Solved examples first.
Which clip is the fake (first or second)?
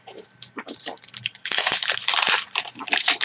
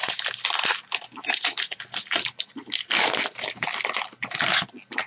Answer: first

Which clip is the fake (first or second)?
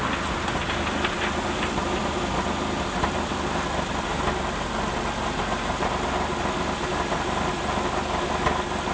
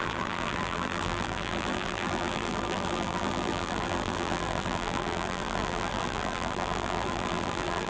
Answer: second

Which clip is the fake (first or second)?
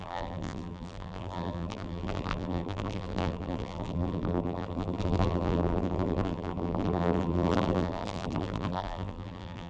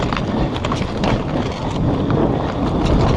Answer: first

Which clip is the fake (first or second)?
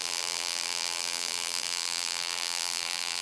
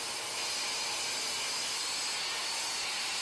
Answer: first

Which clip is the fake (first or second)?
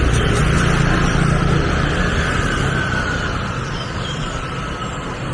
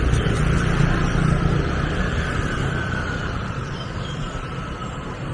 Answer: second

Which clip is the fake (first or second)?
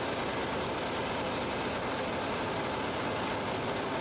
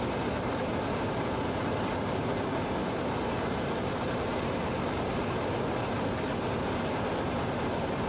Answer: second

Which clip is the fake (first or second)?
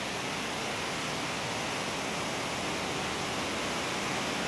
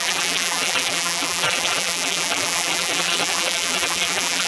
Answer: second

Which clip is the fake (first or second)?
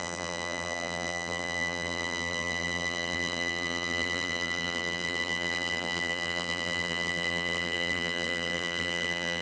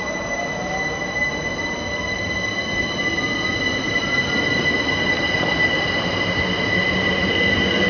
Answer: first